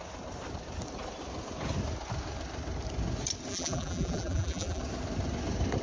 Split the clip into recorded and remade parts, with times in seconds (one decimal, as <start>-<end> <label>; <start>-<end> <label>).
0.0-3.5 recorded; 3.5-4.8 remade; 4.8-5.8 recorded